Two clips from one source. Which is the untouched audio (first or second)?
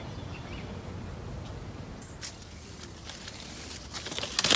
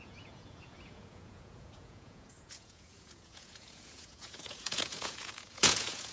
first